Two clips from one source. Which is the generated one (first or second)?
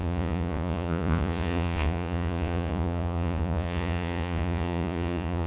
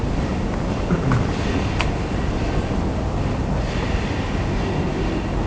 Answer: first